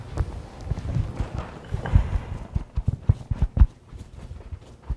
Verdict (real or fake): real